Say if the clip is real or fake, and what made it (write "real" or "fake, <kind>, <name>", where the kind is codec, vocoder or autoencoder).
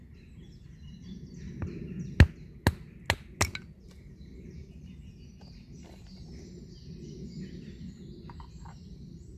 real